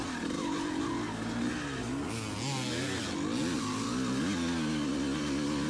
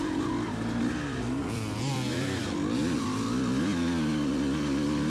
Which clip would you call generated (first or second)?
second